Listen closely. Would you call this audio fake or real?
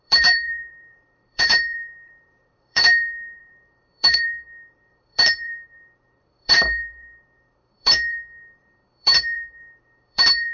fake